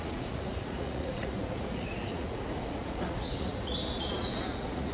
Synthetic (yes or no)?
yes